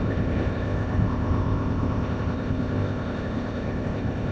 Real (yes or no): no